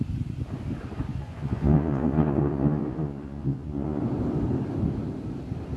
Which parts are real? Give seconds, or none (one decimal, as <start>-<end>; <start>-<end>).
0.0-1.1; 4.0-5.8